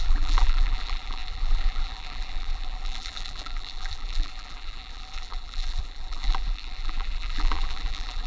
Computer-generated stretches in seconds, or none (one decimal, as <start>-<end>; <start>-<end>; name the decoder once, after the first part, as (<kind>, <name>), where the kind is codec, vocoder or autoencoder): 0.0-8.3 (vocoder, BigVGAN v2)